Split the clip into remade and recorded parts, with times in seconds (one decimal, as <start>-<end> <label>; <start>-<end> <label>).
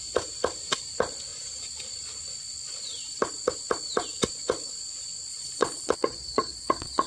0.0-5.3 recorded; 5.3-7.1 remade